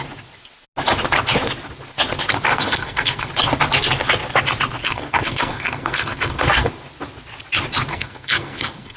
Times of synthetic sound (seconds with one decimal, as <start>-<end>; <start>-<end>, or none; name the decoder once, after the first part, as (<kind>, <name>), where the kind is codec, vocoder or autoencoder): 2.5-3.3 (codec, SNAC); 4.8-6.7; 7.9-9.0